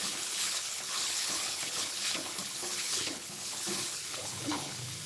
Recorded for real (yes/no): no